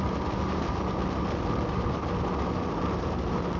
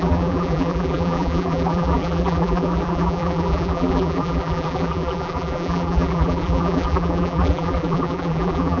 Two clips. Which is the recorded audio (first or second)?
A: first